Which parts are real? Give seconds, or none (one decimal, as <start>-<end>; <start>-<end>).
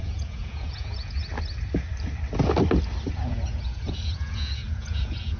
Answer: 1.2-3.1